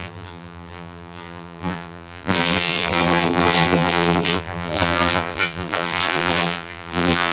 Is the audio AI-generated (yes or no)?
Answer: yes